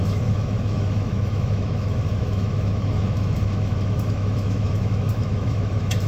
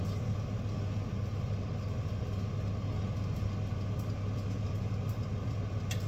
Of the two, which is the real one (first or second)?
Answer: second